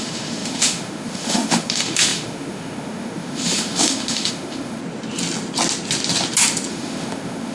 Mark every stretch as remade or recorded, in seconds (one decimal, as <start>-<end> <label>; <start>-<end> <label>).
0.0-4.8 remade; 4.8-6.7 recorded; 6.7-7.5 remade